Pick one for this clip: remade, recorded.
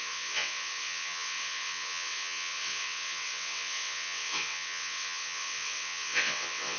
remade